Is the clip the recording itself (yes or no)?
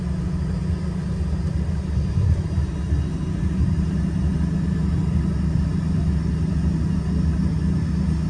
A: yes